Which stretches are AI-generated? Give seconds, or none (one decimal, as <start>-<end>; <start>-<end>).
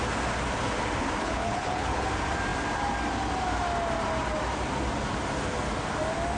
1.2-2.0